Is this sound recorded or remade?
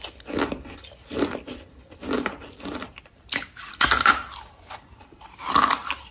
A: recorded